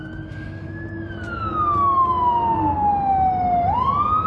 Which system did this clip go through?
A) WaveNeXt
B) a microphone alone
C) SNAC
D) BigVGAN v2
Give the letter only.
B